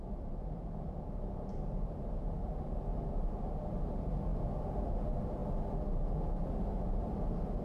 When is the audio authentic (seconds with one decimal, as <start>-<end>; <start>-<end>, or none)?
2.9-3.7; 4.3-4.9; 5.4-6.6